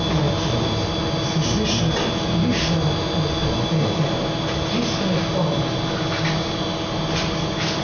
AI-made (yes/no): no